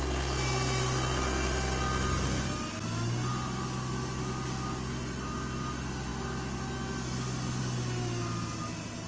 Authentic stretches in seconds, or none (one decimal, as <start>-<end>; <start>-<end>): 0.0-9.1

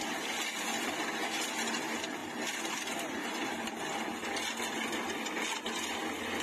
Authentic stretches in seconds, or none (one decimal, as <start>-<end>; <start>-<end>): 0.0-2.2; 4.0-6.4